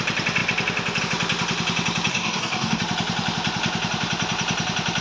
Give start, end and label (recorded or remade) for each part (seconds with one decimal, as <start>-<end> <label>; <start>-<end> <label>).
0.0-2.1 recorded; 2.1-2.8 remade; 2.8-5.0 recorded